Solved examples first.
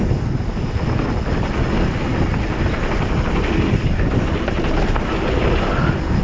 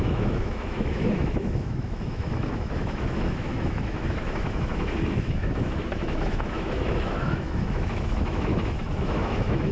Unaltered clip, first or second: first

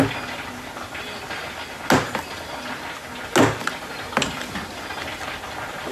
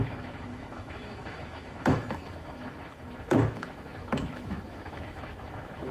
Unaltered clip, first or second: first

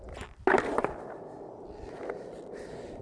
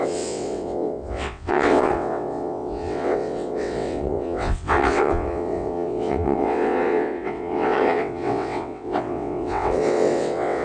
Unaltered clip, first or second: first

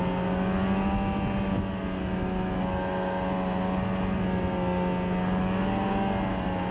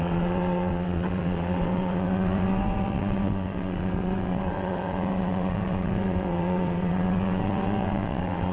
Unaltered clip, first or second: first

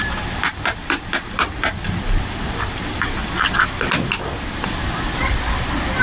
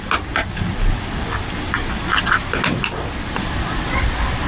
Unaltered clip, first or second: second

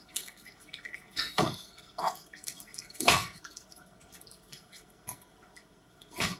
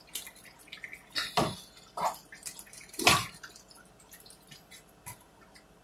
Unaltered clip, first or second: second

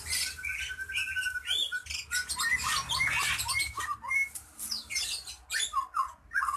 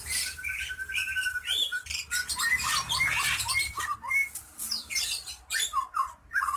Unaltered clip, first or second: first